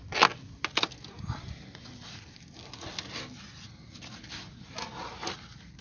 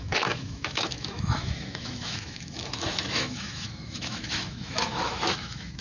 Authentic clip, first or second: first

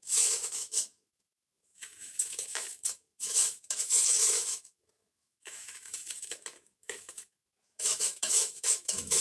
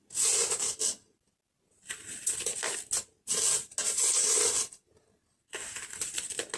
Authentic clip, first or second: second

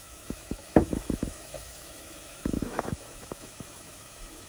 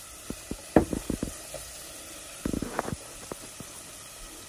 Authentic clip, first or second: second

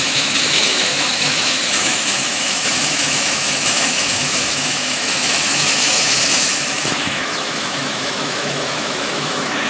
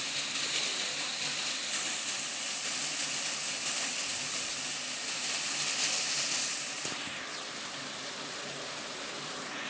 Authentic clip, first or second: second